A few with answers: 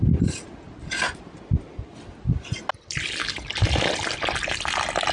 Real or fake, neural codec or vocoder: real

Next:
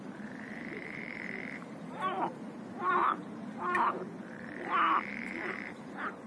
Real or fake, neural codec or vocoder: fake, vocoder, BigVGAN v2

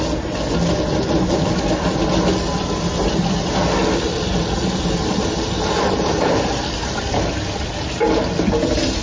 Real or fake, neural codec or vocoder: real